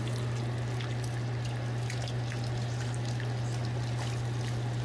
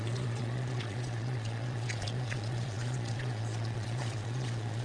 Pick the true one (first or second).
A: first